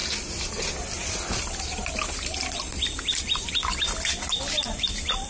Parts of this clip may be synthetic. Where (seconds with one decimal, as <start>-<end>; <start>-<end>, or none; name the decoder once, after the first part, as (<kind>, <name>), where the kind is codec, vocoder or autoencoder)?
none